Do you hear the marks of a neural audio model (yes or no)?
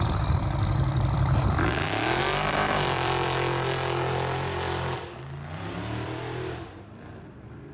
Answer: yes